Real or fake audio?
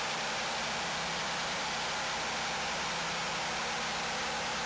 real